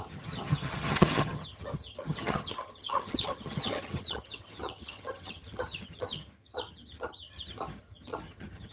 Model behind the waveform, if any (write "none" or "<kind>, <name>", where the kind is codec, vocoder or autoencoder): vocoder, HiFi-GAN